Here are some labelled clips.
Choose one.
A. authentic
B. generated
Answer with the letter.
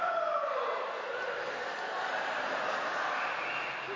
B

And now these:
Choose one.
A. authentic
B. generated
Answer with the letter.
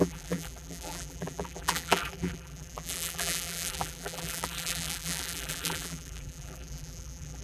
B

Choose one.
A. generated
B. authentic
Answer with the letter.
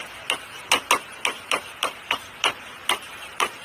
B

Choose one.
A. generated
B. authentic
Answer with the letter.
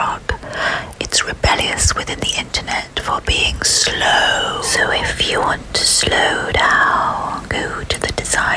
A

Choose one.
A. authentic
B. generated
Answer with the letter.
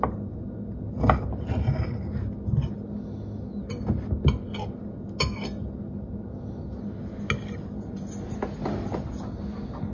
A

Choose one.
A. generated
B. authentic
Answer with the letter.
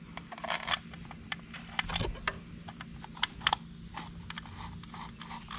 B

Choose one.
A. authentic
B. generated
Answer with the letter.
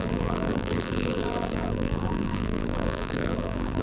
B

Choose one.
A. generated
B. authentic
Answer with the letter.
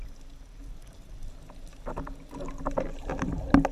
B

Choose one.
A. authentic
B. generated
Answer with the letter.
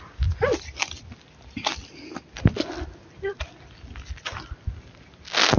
A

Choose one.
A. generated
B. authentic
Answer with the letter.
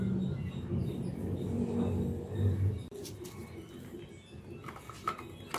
B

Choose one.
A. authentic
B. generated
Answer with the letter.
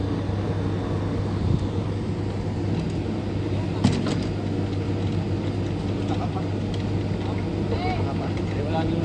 A